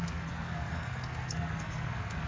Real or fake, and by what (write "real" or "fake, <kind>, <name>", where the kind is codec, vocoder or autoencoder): fake, codec, SNAC